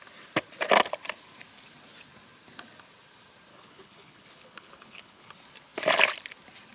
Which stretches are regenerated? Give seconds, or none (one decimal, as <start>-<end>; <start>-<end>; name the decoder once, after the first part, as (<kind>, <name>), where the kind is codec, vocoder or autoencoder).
3.5-5.3 (codec, HILCodec)